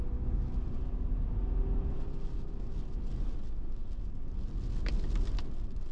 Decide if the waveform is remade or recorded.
recorded